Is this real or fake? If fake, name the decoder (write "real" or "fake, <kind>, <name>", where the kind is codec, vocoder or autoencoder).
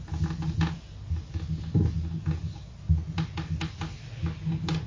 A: real